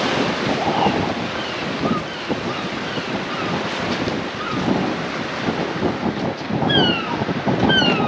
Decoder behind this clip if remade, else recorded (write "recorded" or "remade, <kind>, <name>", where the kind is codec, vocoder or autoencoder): recorded